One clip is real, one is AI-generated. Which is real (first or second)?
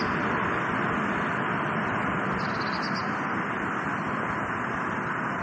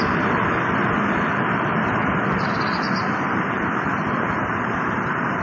first